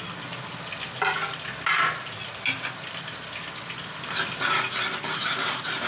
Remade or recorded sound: recorded